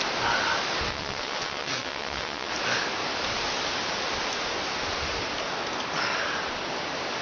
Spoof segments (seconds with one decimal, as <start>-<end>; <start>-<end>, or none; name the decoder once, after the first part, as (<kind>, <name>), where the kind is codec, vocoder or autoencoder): 0.9-2.5 (vocoder, WaveNeXt)